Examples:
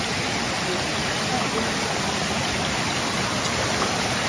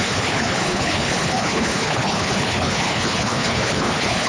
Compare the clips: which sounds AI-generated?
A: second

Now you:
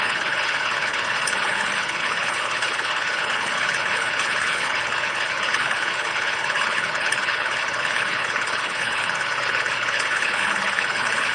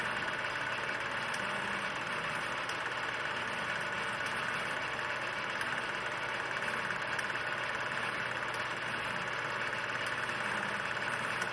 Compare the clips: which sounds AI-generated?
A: first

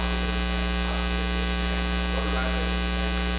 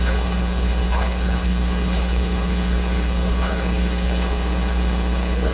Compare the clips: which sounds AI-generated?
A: second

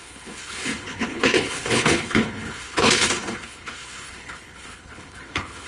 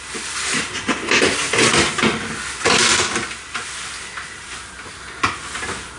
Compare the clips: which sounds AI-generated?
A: first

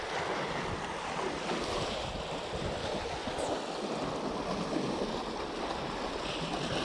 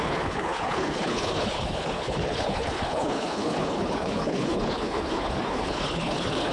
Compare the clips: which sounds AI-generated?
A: second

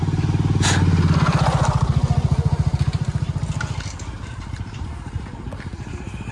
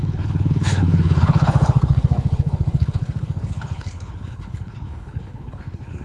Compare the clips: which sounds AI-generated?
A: second